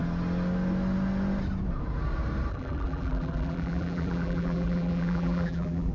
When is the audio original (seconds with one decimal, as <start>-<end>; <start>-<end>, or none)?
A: 0.0-2.5